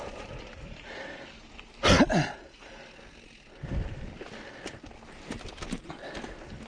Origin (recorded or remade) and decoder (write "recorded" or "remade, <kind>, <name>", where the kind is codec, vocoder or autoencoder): recorded